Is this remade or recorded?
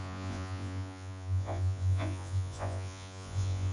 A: remade